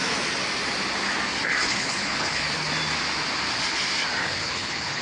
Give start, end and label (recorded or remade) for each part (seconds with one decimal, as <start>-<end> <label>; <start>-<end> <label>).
0.0-1.6 recorded; 1.6-2.7 remade; 2.7-4.2 recorded; 4.2-5.0 remade